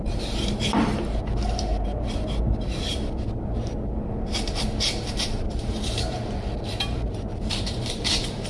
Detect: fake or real fake